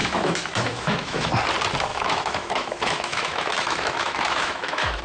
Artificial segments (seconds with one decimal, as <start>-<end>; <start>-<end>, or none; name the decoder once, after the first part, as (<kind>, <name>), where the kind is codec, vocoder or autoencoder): 0.0-1.3 (autoencoder, DAC-VAE); 1.9-5.0